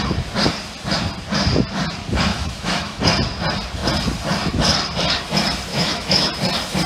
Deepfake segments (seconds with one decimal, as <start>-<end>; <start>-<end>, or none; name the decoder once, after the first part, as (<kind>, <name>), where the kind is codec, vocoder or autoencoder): 2.3-3.0 (autoencoder, DAC-VAE); 5.7-6.3